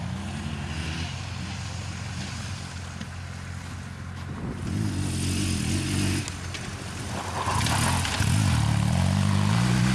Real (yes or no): yes